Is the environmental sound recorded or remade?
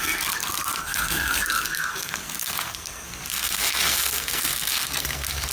remade